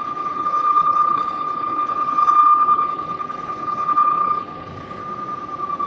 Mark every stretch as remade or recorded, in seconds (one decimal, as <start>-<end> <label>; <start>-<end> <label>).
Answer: 0.0-5.0 remade; 5.0-5.9 recorded